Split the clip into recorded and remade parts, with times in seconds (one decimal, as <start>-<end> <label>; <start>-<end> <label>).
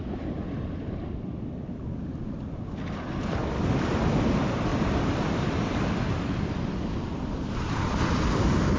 0.0-3.4 remade; 3.4-3.9 recorded; 3.9-8.8 remade